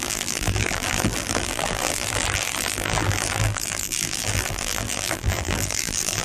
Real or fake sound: fake